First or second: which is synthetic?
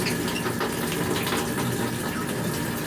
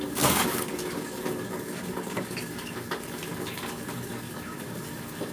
second